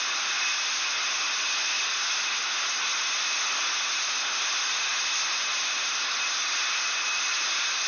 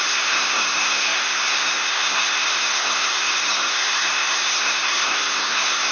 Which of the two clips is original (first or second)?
first